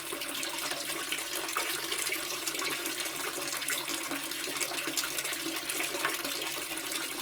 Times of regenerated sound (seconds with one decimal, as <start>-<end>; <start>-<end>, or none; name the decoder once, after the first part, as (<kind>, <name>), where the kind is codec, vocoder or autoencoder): 1.6-2.4 (vocoder, BigVGAN v2)